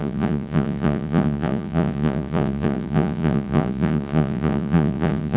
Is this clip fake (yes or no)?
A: yes